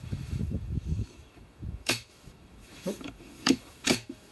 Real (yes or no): no